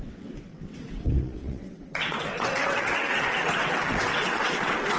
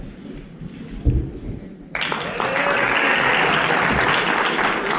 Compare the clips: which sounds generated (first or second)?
first